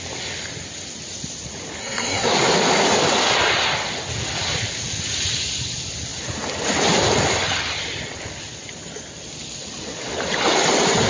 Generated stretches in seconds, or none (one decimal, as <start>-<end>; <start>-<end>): 1.8-2.3